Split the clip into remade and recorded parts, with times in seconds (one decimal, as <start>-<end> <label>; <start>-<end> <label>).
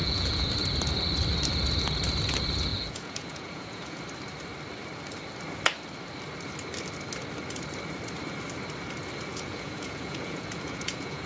0.0-0.5 remade; 0.5-2.7 recorded; 2.7-4.0 remade; 4.0-9.3 recorded; 9.3-11.3 remade